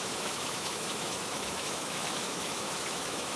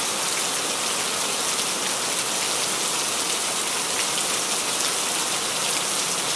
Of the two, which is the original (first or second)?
second